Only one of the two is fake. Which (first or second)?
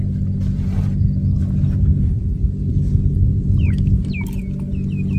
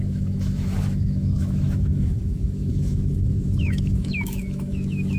second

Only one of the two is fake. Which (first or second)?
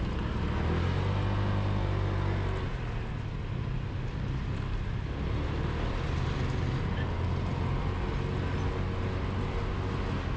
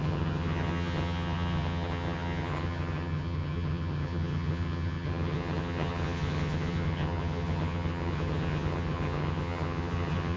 second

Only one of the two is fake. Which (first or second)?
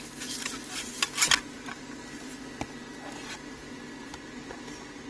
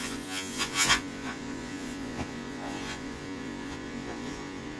second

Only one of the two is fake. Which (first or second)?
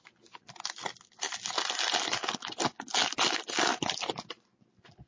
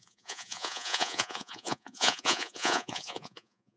second